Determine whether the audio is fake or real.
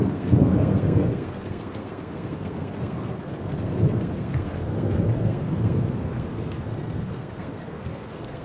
fake